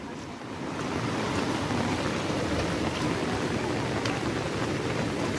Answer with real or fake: real